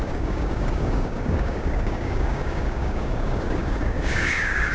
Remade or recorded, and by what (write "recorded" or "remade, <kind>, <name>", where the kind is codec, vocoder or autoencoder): remade, codec, DAC